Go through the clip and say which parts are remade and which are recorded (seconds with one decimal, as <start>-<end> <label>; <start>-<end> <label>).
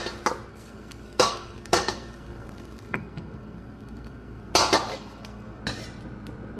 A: 0.0-0.5 recorded; 0.5-4.5 remade; 4.5-4.9 recorded; 4.9-5.6 remade; 5.6-6.6 recorded